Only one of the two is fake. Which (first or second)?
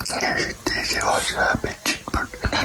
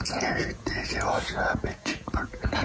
second